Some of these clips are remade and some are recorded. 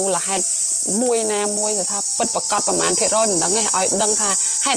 recorded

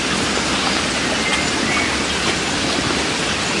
recorded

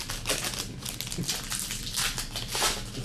recorded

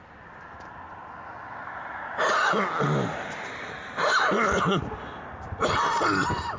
recorded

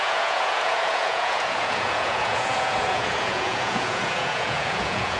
remade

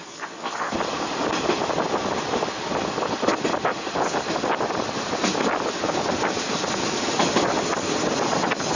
recorded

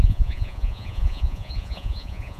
remade